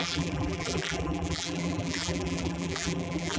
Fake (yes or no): yes